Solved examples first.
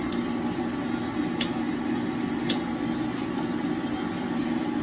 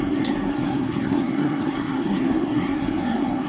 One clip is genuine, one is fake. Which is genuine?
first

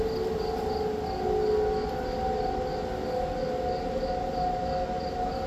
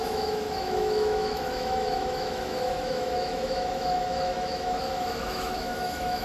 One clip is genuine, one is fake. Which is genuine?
first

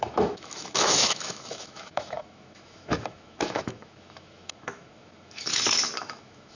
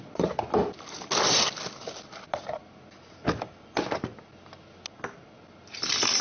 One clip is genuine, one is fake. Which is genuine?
second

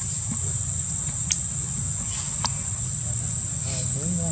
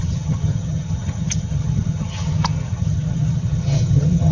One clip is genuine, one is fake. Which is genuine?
first